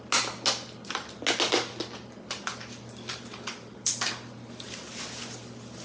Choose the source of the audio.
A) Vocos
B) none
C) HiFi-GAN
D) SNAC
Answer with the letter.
B